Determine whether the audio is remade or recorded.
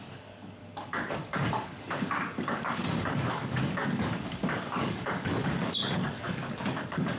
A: remade